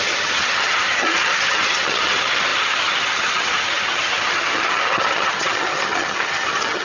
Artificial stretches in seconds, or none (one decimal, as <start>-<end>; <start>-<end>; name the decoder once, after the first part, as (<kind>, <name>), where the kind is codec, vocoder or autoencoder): 0.0-6.8 (vocoder, HiFi-GAN)